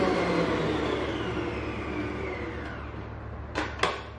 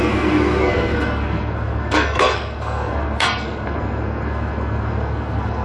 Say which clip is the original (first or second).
first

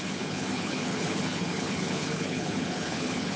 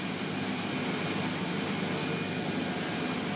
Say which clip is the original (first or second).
second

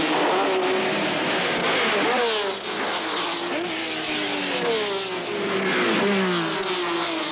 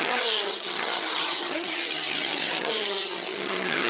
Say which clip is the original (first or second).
first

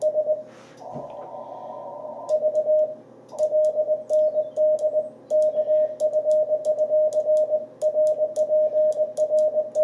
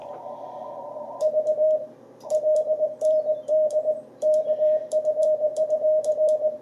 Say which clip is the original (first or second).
first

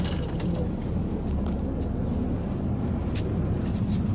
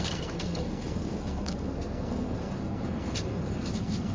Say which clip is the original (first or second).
first